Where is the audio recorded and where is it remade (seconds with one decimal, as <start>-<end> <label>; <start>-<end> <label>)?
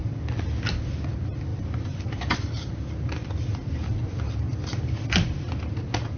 0.0-6.2 recorded